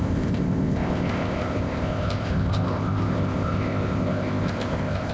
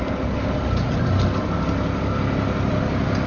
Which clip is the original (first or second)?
second